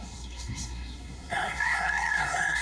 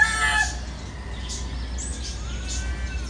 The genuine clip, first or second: second